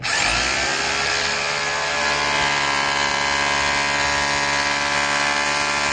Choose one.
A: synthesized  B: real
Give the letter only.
B